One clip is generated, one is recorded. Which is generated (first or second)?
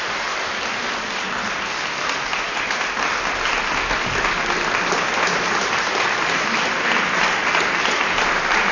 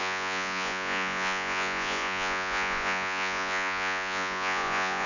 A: second